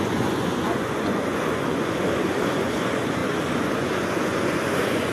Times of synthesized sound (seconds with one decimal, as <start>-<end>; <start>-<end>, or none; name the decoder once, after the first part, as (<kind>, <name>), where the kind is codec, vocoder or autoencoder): 0.0-5.1 (vocoder, Vocos)